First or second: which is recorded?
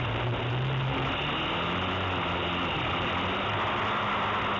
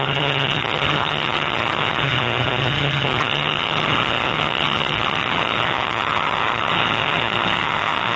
first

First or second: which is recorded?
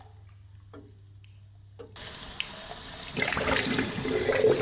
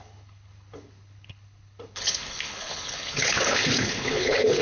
first